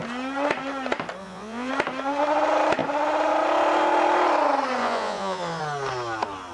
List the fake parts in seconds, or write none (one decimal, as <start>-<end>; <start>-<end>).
1.2-1.7; 4.8-5.6